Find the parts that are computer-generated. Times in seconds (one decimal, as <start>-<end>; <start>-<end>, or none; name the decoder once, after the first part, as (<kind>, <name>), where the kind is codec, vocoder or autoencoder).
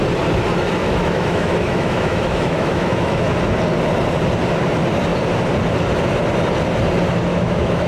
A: 0.8-3.3 (autoencoder, DAC-VAE); 7.3-7.9